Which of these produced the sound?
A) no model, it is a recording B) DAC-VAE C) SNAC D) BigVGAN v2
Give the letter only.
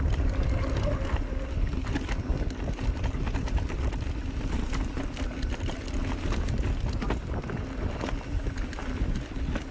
A